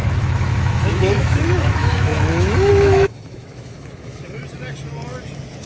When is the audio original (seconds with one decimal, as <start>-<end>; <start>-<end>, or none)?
4.4-5.7